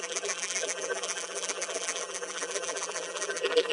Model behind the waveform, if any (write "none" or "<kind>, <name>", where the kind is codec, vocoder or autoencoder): vocoder, BigVGAN v2